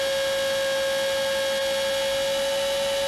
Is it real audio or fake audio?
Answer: real